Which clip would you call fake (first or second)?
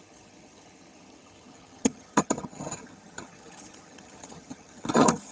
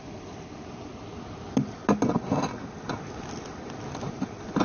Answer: first